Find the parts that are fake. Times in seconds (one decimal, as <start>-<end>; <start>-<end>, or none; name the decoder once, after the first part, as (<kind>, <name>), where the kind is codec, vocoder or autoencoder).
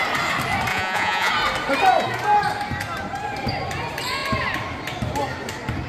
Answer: 0.7-1.3 (vocoder, Vocos)